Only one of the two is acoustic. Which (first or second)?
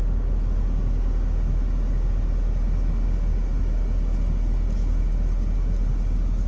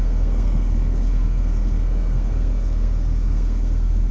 first